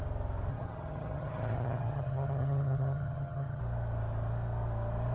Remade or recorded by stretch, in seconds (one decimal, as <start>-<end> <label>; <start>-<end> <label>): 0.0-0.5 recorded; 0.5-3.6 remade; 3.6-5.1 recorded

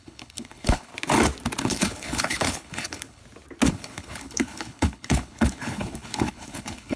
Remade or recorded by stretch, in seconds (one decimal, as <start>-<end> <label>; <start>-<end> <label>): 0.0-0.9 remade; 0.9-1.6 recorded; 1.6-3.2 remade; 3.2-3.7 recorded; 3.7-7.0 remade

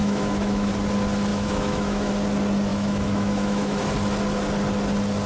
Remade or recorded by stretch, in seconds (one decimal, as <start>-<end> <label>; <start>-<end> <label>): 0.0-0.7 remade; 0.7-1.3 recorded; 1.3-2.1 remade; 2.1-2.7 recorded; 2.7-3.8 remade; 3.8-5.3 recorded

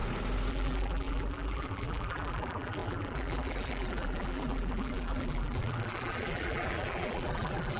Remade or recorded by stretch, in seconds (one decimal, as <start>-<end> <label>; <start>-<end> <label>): 0.0-0.5 recorded; 0.5-7.8 remade

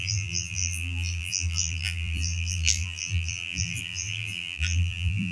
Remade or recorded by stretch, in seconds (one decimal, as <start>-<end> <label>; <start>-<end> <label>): 0.0-5.3 remade